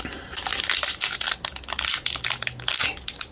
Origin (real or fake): real